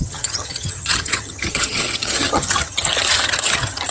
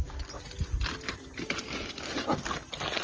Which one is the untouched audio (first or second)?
second